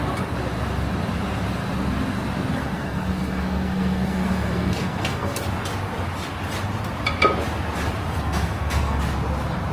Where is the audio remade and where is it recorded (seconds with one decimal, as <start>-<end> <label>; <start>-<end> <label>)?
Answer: 0.0-2.5 recorded; 2.5-5.4 remade; 5.4-8.1 recorded; 8.1-9.0 remade; 9.0-9.7 recorded